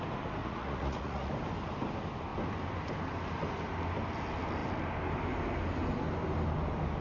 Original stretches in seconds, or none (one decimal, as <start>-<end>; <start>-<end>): 0.0-0.4; 1.3-7.0

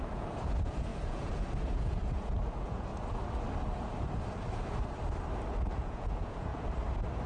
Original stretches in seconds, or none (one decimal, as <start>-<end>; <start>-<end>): 2.9-5.5; 6.5-7.3

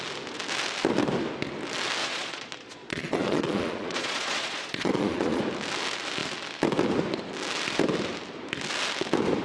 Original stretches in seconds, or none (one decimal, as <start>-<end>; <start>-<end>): 0.0-2.0; 5.4-9.4

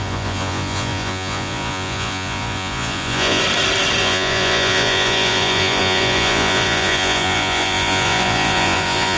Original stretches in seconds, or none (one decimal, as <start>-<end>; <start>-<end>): 3.4-4.0

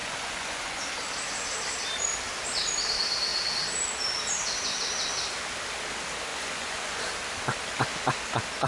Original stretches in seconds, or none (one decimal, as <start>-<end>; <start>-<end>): 0.8-6.3; 7.0-8.7

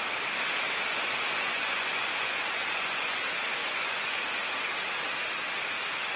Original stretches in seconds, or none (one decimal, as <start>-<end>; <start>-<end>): 0.0-0.9; 3.2-3.6; 4.2-6.2

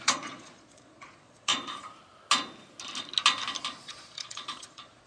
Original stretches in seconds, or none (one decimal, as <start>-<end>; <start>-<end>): 1.5-3.8

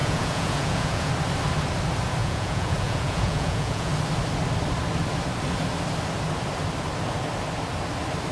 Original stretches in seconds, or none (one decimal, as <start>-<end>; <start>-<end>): 1.1-2.2; 3.9-8.3